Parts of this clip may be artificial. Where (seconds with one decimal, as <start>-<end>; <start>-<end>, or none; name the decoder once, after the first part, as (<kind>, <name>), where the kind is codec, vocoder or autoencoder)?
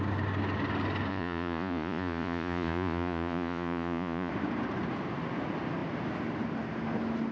1.1-4.3 (vocoder, Vocos)